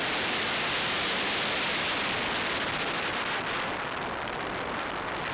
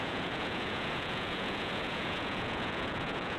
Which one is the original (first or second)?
first